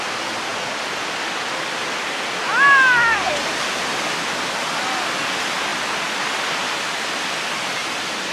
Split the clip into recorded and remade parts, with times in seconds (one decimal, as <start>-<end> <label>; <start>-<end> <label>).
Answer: 0.0-8.3 recorded